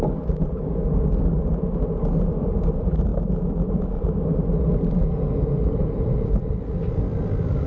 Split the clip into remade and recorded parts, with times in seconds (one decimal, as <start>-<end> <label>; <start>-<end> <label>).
0.0-3.1 recorded; 3.1-3.7 remade; 3.7-7.7 recorded